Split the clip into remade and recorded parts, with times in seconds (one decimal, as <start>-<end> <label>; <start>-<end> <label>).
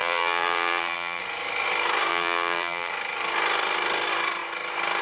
0.0-1.2 remade; 1.2-2.1 recorded; 2.1-2.9 remade; 2.9-5.0 recorded